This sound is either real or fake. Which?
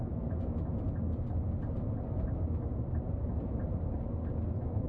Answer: real